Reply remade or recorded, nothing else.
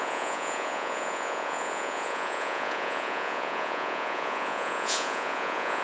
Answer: remade